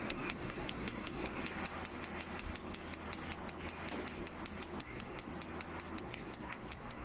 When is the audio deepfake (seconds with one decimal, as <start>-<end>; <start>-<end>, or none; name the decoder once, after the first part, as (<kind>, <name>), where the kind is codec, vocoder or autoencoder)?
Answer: 0.0-1.4 (codec, SNAC); 4.8-5.3; 6.0-7.0